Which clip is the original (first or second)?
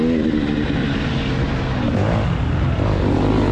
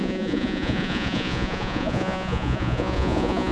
first